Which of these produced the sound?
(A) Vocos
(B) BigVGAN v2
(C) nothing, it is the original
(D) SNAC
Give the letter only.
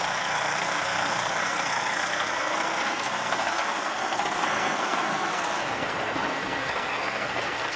D